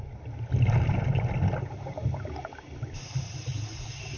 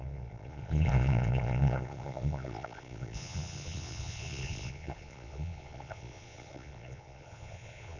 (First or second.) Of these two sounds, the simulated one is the second